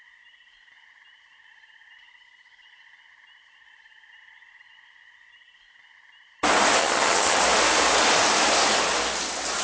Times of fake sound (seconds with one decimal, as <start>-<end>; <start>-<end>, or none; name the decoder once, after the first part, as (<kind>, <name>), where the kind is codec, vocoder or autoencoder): 6.8-7.4 (vocoder, HiFi-GAN)